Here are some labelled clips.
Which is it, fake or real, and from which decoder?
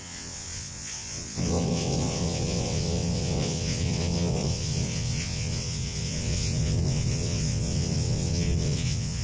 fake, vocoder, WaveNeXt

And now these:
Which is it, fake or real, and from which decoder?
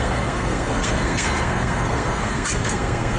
fake, codec, SNAC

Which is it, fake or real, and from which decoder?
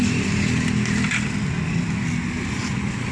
real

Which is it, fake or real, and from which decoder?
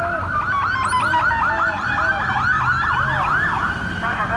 real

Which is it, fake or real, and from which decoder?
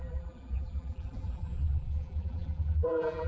fake, vocoder, BigVGAN v2